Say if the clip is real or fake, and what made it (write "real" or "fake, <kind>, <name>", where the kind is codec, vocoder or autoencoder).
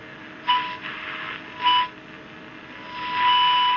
real